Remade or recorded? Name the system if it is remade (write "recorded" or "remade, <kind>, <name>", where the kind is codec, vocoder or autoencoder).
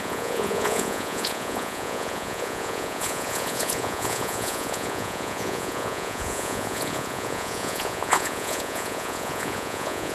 remade, vocoder, Vocos